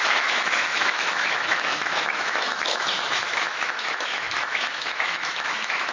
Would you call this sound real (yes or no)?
no